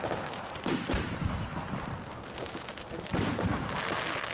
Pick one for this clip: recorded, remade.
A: recorded